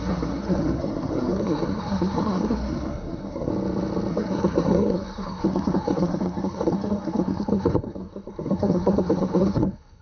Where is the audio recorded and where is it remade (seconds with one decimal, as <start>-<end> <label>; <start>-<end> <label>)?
0.0-3.5 remade; 3.5-4.1 recorded; 4.1-10.0 remade